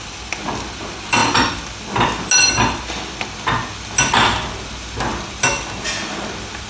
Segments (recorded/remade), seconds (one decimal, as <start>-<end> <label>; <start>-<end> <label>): 0.0-6.7 recorded